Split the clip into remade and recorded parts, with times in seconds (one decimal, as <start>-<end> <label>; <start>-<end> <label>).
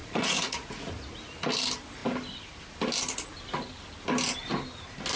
0.0-0.9 remade; 0.9-5.2 recorded